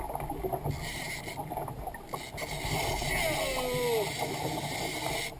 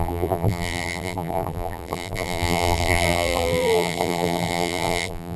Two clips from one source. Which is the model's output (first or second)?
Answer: second